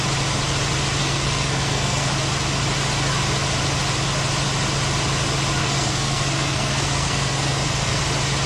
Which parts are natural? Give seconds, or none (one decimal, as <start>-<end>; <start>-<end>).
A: 0.0-1.0; 2.1-5.6; 8.0-8.5